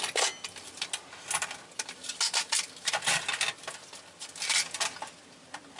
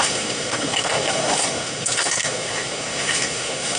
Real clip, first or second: first